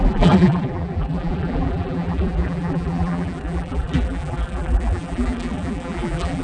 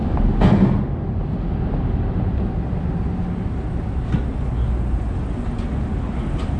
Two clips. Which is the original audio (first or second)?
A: second